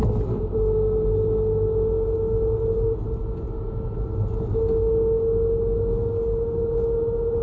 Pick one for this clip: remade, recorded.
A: recorded